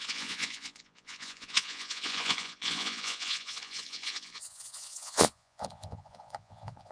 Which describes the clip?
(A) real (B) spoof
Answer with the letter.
B